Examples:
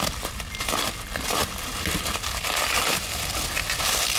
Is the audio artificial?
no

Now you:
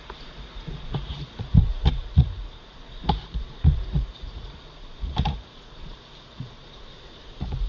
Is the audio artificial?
yes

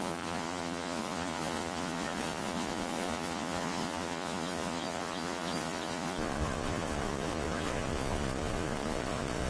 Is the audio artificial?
yes